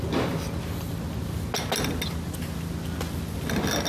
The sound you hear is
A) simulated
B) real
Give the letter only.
B